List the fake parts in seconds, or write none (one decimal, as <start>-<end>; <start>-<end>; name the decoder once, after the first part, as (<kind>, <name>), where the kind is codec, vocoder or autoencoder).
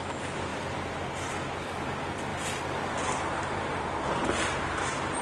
none